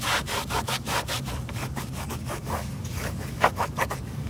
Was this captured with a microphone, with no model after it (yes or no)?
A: no